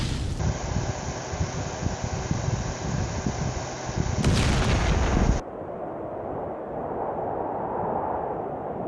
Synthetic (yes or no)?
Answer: no